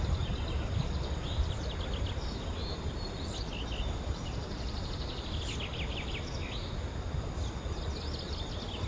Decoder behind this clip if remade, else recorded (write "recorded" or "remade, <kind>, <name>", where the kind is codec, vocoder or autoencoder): recorded